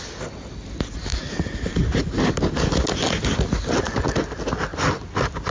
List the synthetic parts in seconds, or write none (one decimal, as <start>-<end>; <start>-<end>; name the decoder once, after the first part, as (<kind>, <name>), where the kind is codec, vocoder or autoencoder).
none